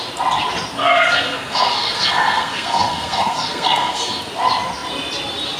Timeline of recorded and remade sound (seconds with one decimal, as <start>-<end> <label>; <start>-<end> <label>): 0.0-0.8 recorded; 0.8-4.2 remade; 4.2-5.6 recorded